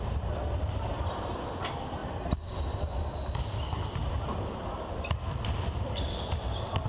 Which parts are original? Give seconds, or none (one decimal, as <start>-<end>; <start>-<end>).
2.0-2.6; 4.0-4.7